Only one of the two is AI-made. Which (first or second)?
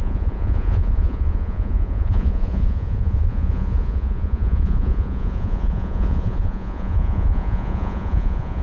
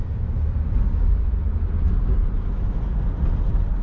first